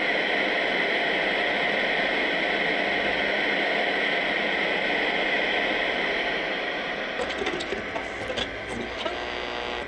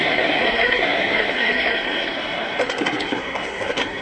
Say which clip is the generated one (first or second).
second